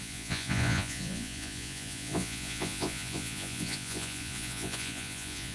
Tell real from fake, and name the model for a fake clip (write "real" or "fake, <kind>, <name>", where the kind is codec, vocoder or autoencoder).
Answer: fake, vocoder, Vocos